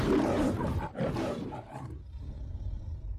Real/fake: fake